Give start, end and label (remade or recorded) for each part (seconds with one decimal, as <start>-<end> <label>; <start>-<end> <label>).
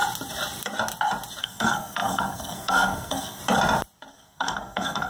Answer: 0.0-1.4 recorded; 1.4-3.4 remade; 3.4-4.1 recorded; 4.1-5.1 remade